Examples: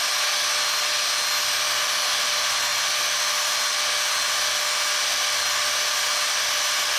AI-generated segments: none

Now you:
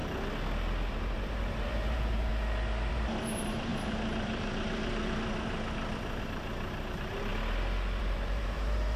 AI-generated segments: 0.9-2.3 (vocoder, BigVGAN v2); 2.9-7.3; 8.0-9.0

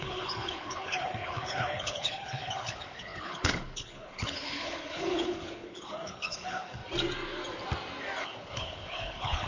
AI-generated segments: 0.0-6.8 (codec, HILCodec); 8.2-9.5

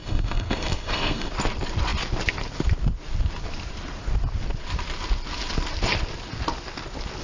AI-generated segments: 0.0-1.3 (codec, SNAC)

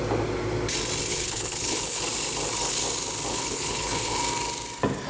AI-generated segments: 1.1-2.0 (codec, HILCodec); 3.3-4.2

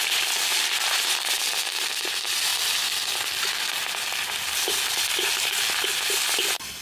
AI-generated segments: 0.5-1.5 (vocoder, BigVGAN v2)